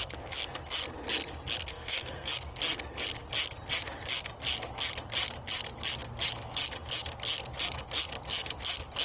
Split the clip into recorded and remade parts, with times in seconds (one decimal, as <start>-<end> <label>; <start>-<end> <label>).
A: 0.0-1.7 recorded; 1.7-2.3 remade; 2.3-9.0 recorded